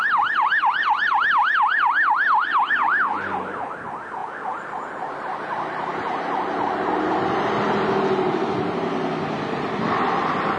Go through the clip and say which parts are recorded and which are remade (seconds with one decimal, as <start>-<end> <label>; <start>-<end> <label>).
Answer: 0.0-10.6 recorded